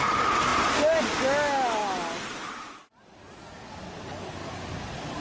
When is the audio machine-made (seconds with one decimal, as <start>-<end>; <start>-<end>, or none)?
none